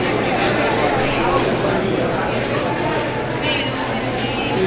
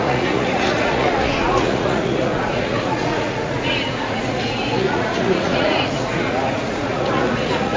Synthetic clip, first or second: second